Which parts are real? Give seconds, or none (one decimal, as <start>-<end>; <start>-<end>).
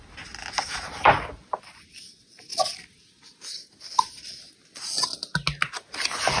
0.0-6.4